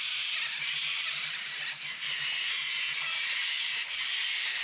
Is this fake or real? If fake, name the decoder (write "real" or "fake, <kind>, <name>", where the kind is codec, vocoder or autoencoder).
fake, vocoder, BigVGAN v2